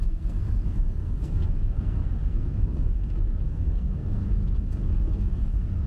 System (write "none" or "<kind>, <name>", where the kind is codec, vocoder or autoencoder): codec, SNAC